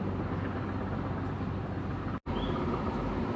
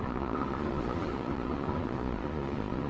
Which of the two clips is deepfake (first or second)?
second